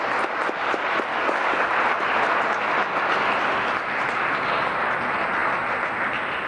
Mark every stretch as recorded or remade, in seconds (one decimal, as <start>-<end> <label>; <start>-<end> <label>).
0.0-1.1 recorded; 1.1-1.7 remade; 1.7-6.5 recorded